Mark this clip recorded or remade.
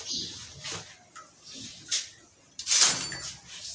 recorded